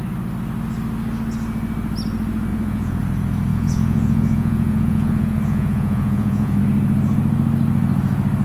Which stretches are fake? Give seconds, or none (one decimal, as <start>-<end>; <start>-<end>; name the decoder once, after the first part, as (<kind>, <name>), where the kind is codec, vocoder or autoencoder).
2.5-3.0 (vocoder, Vocos); 3.5-6.6